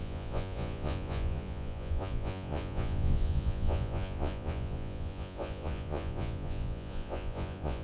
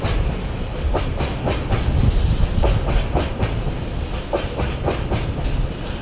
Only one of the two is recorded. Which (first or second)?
second